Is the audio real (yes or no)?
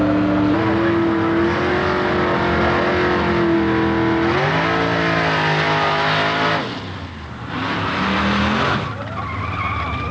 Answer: yes